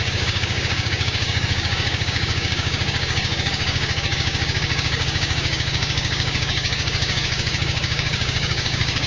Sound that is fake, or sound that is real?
fake